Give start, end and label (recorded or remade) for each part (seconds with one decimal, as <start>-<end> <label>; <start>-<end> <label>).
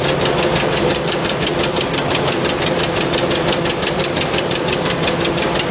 0.0-0.9 remade; 0.9-1.5 recorded; 1.5-5.7 remade